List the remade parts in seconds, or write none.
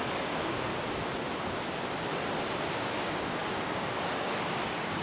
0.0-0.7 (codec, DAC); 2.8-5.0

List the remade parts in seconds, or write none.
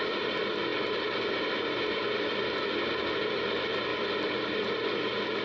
3.9-4.7 (vocoder, BigVGAN v2)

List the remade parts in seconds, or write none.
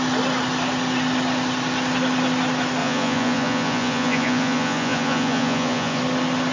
2.8-6.0 (vocoder, Vocos)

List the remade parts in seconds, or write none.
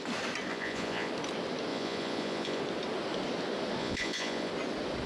0.5-1.1 (vocoder, Vocos); 1.7-2.6; 3.8-4.5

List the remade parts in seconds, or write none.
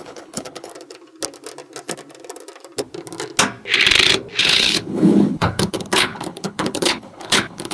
0.0-0.7 (codec, HILCodec); 4.4-7.7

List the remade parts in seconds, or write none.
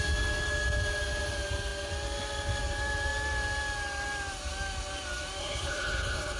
5.4-6.4 (codec, HILCodec)